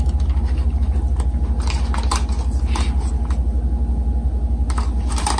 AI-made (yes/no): no